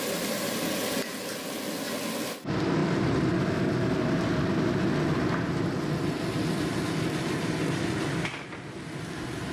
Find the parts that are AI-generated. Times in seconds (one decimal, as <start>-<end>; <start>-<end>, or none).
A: none